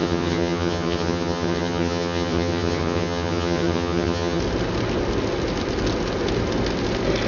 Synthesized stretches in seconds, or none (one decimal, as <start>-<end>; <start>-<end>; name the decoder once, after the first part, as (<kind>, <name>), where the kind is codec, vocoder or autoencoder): 0.0-4.4 (vocoder, HiFi-GAN)